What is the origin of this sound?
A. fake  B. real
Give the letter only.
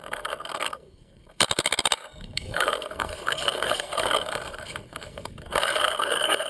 A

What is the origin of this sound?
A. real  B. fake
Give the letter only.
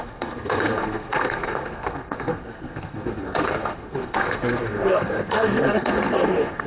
B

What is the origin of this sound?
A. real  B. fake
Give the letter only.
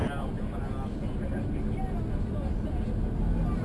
A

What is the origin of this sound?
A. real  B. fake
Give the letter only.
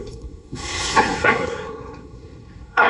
B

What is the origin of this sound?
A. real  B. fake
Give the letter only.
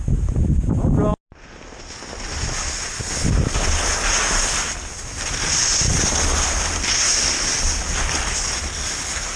A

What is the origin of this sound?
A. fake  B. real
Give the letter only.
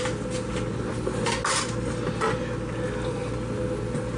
B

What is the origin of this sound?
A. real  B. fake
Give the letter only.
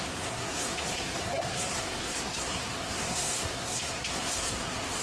B